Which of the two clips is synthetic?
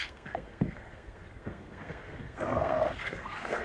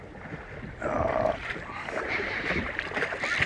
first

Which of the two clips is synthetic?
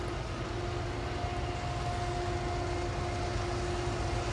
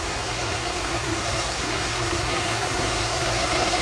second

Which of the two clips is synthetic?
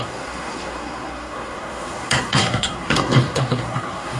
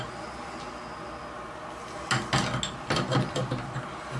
first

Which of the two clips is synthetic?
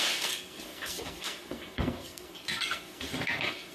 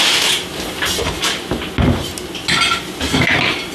first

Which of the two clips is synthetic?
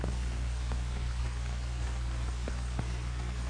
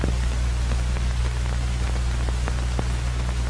first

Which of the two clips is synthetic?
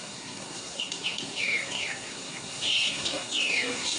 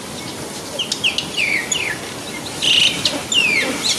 first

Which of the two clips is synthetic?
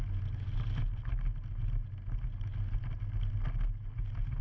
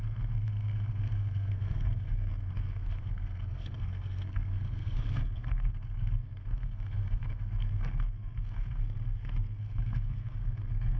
second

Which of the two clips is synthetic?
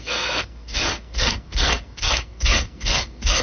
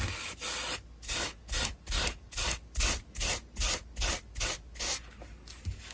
first